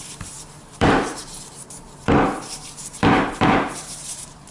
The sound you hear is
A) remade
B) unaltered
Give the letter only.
A